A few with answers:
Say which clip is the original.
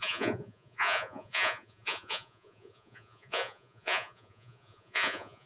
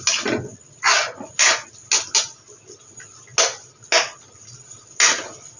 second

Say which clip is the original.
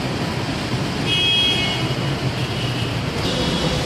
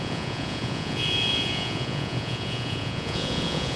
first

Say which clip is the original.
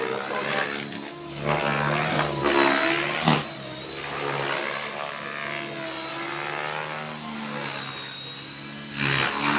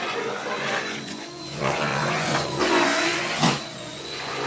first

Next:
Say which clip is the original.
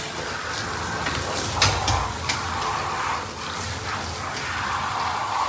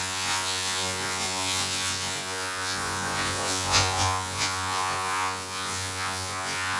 first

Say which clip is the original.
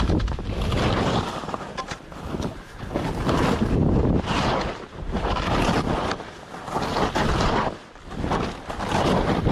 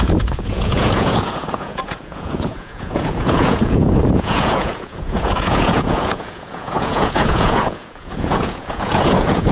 first